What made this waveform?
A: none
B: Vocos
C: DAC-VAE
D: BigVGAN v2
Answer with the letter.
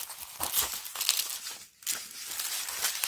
A